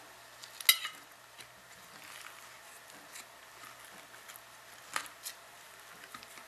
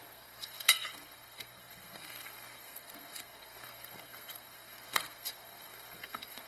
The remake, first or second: second